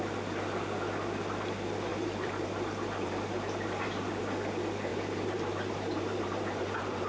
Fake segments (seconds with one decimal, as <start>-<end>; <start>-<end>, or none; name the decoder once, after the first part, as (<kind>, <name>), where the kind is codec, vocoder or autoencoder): 1.9-4.2 (vocoder, BigVGAN v2); 4.9-7.1